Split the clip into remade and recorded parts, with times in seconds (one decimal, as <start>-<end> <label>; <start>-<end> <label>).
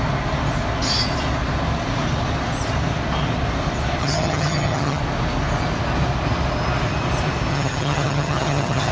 0.0-4.0 recorded; 4.0-5.0 remade; 5.0-7.5 recorded; 7.5-8.9 remade